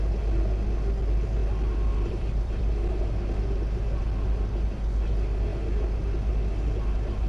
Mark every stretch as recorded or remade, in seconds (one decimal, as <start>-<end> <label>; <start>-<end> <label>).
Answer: 0.0-1.4 recorded; 1.4-3.1 remade; 3.1-7.3 recorded